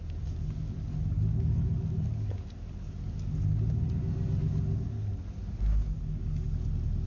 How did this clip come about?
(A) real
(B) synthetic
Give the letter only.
A